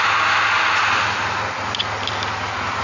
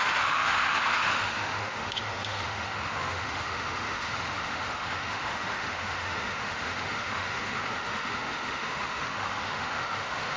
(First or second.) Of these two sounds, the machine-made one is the second